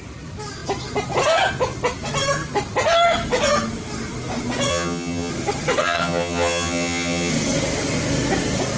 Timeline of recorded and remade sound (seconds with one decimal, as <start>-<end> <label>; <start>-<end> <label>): 0.0-4.7 recorded; 4.7-5.3 remade; 5.3-5.8 recorded; 5.8-7.3 remade; 7.3-8.8 recorded